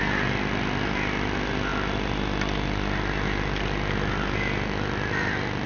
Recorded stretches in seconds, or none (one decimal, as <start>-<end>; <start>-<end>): 0.0-5.7